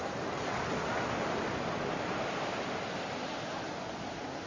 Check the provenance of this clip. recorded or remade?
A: recorded